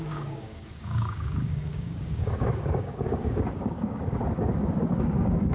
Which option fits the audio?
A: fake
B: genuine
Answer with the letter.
A